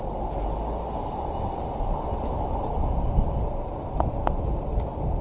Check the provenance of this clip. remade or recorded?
recorded